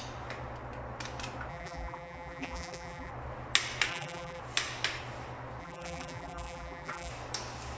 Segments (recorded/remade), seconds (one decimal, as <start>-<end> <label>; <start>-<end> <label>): 0.0-1.5 recorded; 1.5-3.1 remade; 3.1-3.9 recorded; 3.9-4.4 remade; 4.4-5.6 recorded; 5.6-7.1 remade; 7.1-7.8 recorded